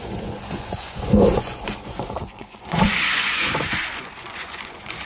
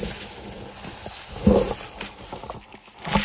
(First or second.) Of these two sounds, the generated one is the first